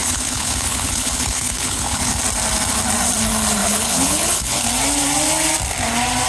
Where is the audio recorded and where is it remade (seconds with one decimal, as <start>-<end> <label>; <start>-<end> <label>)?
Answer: 0.0-2.2 remade; 2.2-3.6 recorded; 3.6-4.6 remade; 4.6-6.3 recorded

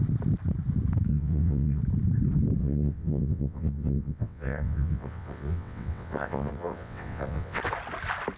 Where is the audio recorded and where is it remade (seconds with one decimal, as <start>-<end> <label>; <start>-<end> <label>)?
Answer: 0.0-1.1 recorded; 1.1-1.8 remade; 1.8-2.6 recorded; 2.6-7.6 remade; 7.6-8.4 recorded

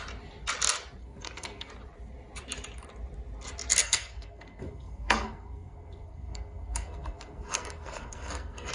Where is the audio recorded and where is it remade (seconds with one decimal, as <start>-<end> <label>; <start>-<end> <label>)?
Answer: 0.0-1.0 recorded; 1.0-1.7 remade; 1.7-3.8 recorded; 3.8-8.7 remade